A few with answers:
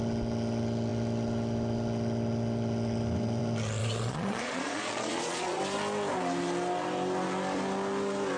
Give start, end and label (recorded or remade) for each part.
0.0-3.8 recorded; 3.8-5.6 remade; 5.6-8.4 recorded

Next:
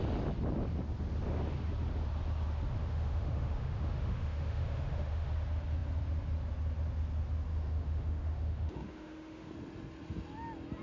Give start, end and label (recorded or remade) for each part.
0.0-2.8 recorded; 2.8-5.3 remade; 5.3-7.5 recorded; 7.5-9.5 remade; 9.5-10.8 recorded

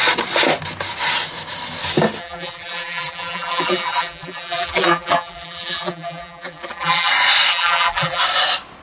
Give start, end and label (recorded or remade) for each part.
0.0-2.2 recorded; 2.2-7.1 remade; 7.1-7.5 recorded; 7.5-8.2 remade; 8.2-8.8 recorded

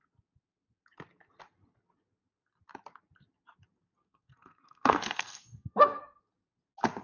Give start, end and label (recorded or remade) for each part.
0.0-4.0 recorded; 4.0-6.2 remade; 6.2-7.0 recorded